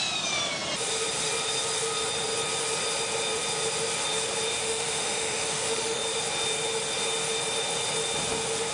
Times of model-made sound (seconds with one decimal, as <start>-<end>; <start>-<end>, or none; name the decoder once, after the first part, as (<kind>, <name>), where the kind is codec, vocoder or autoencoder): 4.6-6.0 (autoencoder, DAC-VAE)